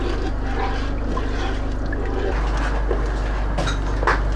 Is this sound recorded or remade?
recorded